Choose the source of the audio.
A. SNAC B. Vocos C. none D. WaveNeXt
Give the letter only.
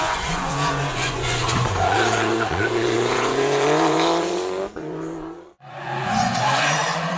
B